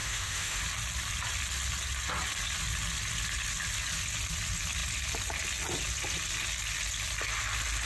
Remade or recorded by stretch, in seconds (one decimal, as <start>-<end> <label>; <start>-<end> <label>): 0.0-0.6 remade; 0.6-7.9 recorded